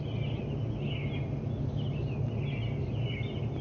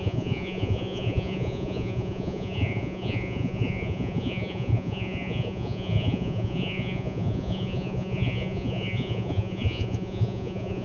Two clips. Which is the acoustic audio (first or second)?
first